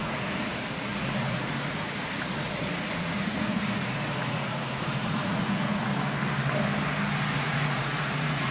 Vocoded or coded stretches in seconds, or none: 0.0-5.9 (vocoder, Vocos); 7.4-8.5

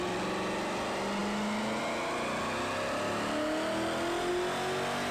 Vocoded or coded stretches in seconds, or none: none